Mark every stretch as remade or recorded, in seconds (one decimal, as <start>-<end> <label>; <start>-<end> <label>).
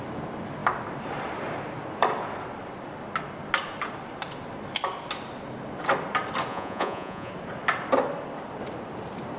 0.0-6.5 recorded; 6.5-7.3 remade; 7.3-9.4 recorded